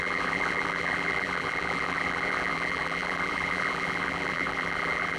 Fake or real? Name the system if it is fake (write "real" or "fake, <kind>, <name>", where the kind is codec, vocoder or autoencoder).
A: fake, vocoder, BigVGAN v2